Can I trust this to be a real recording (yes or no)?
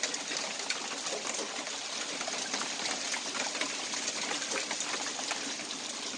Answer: yes